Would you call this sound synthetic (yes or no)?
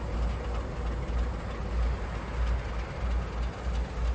no